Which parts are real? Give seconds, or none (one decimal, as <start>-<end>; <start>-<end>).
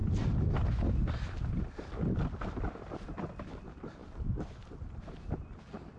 0.0-6.0